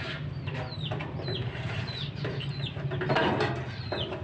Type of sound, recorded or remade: recorded